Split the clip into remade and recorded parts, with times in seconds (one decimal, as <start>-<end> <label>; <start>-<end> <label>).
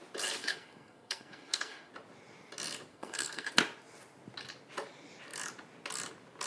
0.0-0.4 recorded; 0.4-1.9 remade; 1.9-2.9 recorded; 2.9-3.6 remade; 3.6-6.5 recorded